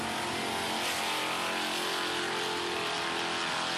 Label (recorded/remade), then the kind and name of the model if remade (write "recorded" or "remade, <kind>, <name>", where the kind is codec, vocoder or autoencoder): recorded